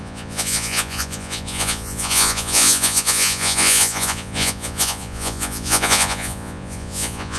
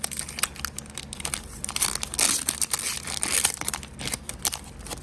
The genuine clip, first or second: second